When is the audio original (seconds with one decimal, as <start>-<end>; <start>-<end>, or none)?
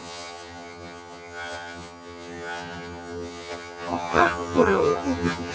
none